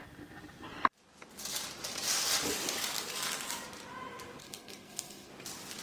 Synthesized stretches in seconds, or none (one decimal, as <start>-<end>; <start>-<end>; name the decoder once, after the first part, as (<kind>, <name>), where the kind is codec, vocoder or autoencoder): 4.4-5.3 (codec, SNAC)